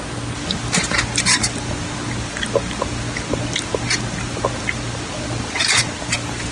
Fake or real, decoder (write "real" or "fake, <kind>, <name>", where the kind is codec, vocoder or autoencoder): real